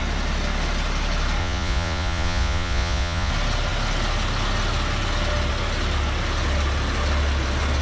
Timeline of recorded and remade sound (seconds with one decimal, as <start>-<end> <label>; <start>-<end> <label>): 0.0-1.4 recorded; 1.4-3.3 remade; 3.3-7.8 recorded